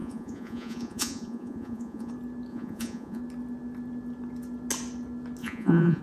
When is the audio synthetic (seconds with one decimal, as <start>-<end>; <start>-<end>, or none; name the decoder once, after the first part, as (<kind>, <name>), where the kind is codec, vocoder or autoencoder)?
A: 0.0-2.1 (vocoder, Vocos); 2.5-3.2; 5.4-6.0